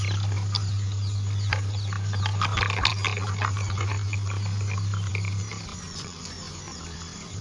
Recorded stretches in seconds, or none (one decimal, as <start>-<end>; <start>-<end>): 0.0-5.7; 6.8-7.4